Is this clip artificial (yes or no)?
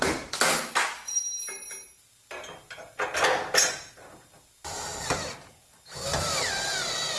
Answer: no